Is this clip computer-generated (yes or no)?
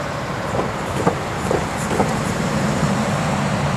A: yes